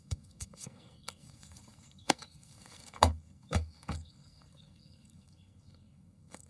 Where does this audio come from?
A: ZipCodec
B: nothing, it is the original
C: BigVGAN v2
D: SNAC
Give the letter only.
D